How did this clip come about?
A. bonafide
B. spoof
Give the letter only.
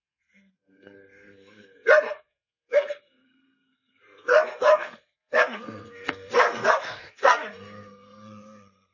B